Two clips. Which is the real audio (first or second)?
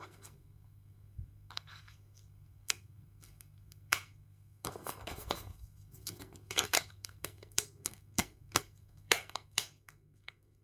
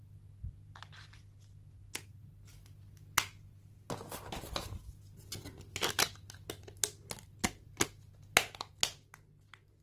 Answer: second